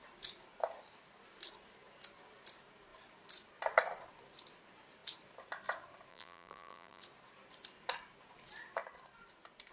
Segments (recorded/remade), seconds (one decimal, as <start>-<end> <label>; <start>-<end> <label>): 0.0-6.1 recorded; 6.1-7.0 remade; 7.0-9.7 recorded